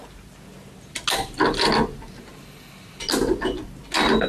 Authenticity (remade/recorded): recorded